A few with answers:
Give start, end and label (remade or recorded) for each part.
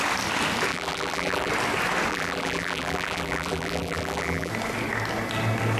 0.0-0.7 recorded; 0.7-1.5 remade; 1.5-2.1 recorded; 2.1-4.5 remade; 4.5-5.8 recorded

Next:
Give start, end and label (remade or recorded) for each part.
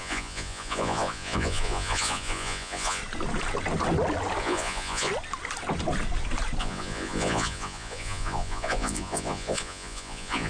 0.0-3.0 remade; 3.0-4.4 recorded; 4.4-5.1 remade; 5.1-6.6 recorded; 6.6-10.5 remade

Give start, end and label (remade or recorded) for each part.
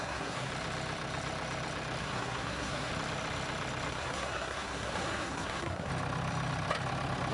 0.0-0.5 remade; 0.5-2.0 recorded; 2.0-2.9 remade; 2.9-3.9 recorded; 3.9-5.9 remade; 5.9-7.3 recorded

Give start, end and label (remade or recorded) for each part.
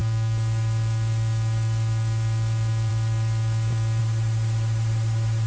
0.0-4.0 recorded; 4.0-5.5 remade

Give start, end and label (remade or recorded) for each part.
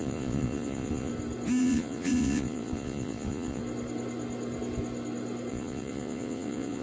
0.0-1.1 remade; 1.1-1.6 recorded; 1.6-3.6 remade; 3.6-5.5 recorded; 5.5-6.8 remade